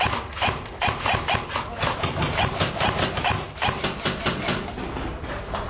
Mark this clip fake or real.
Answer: real